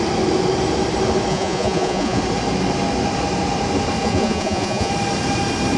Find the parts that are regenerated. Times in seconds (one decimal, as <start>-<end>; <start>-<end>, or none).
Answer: 1.3-2.2; 4.0-4.9